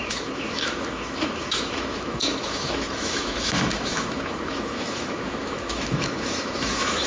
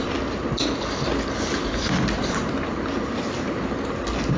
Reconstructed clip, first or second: first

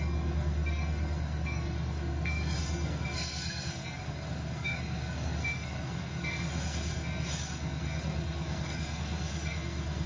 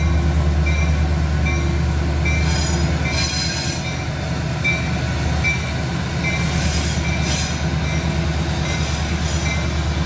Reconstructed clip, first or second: first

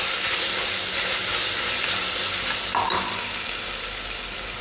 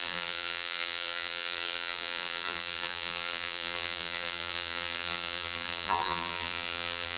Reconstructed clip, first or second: second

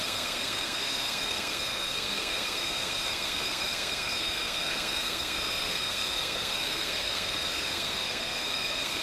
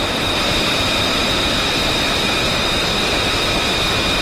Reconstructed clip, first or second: first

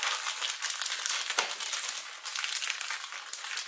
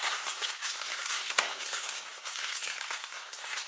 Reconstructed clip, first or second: second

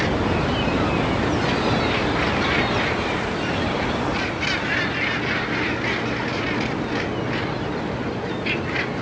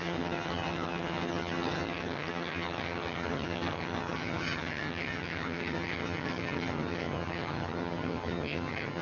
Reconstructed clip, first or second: second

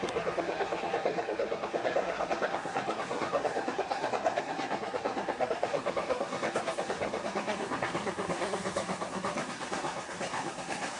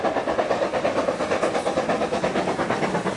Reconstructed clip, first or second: first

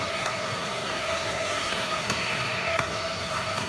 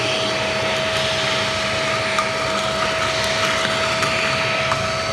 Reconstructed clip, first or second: first